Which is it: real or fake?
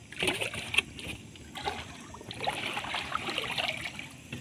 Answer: real